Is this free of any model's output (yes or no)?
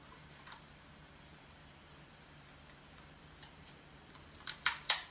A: no